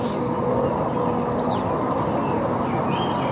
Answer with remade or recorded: recorded